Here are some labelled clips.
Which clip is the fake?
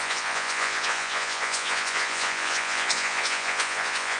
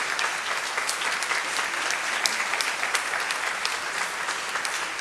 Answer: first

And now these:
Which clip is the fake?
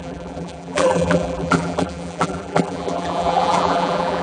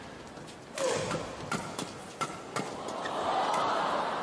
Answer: first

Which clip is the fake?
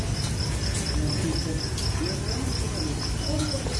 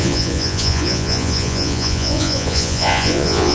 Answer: second